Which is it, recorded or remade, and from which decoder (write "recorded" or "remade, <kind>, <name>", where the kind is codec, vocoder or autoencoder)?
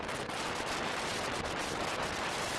recorded